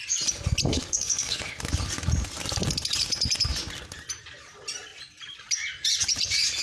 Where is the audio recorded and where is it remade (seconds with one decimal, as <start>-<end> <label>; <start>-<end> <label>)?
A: 0.0-0.7 recorded; 0.7-1.7 remade; 1.7-6.6 recorded